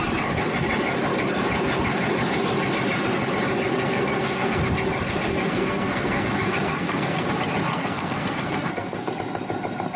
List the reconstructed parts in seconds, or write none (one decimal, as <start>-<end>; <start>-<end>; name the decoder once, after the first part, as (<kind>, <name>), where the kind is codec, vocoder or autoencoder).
3.7-4.6 (codec, SNAC); 5.3-7.3; 7.7-9.1